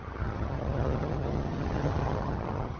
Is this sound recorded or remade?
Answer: remade